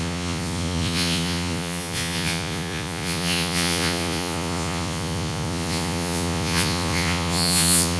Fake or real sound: fake